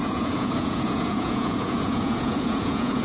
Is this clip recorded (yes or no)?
no